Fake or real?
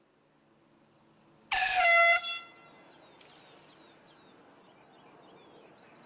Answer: real